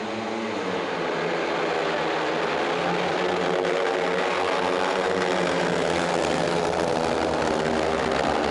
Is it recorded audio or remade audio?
recorded